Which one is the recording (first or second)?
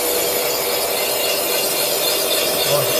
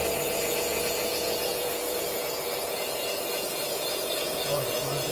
first